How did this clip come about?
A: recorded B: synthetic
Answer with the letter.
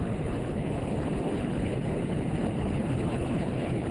B